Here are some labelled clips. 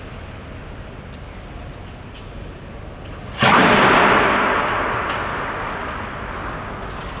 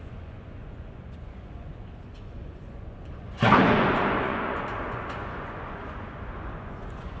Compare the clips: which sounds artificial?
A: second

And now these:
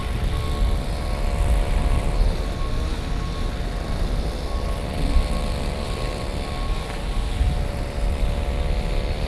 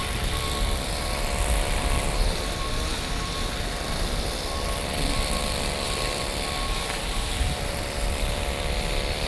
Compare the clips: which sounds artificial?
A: second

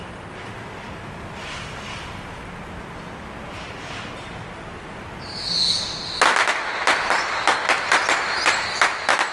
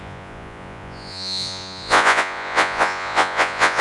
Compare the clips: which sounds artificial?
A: second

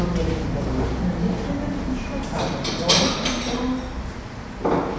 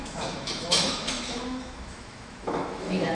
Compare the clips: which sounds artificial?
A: second